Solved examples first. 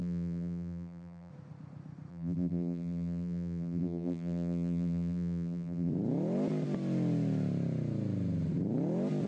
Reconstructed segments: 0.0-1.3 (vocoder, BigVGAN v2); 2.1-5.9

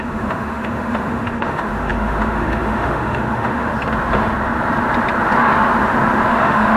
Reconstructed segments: 0.0-3.7 (autoencoder, DAC-VAE); 6.3-6.8

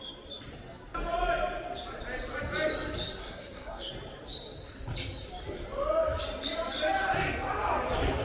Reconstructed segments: 3.2-3.9 (codec, SNAC)

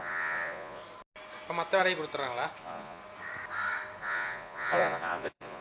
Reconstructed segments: 0.0-0.8 (vocoder, Vocos); 2.6-3.0; 4.0-5.6

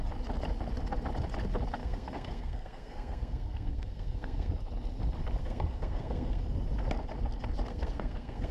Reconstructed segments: 1.8-4.5 (codec, SNAC); 5.4-6.4; 7.7-8.5

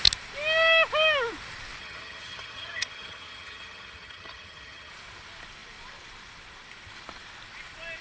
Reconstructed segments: 1.8-4.9 (vocoder, HiFi-GAN)

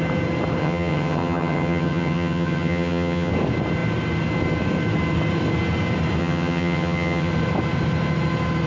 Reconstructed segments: 0.6-3.3 (vocoder, HiFi-GAN); 6.2-7.3